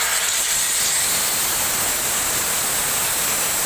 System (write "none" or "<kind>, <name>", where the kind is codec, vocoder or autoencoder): none